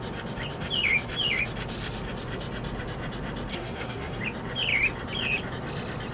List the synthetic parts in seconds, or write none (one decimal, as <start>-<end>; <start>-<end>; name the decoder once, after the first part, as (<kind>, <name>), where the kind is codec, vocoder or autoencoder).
3.5-4.2 (codec, SNAC)